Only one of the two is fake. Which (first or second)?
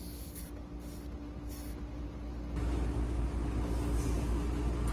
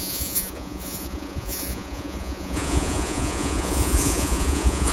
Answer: second